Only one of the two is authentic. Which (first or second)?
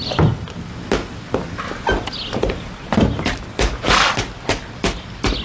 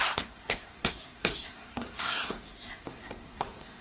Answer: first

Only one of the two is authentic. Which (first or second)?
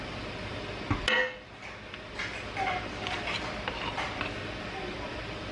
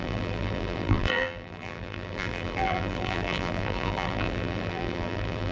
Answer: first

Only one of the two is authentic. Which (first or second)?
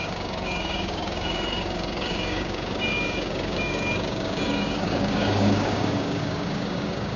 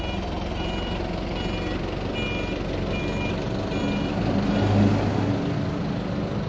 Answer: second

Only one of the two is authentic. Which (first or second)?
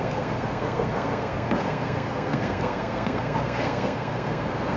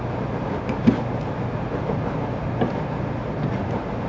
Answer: second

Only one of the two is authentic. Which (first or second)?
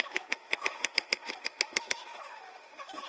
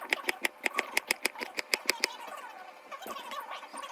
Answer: second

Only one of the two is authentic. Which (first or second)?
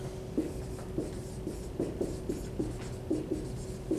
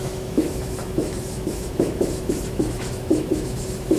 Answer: first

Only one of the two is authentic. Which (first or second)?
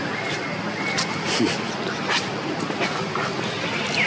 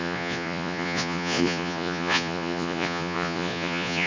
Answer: first